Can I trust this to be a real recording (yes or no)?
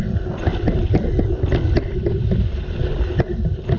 yes